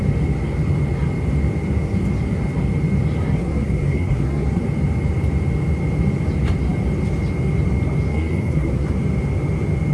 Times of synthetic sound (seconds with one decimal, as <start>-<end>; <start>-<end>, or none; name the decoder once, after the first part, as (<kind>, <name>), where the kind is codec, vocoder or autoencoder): 3.4-4.6 (codec, SNAC); 8.1-8.9